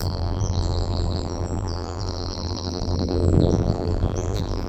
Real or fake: fake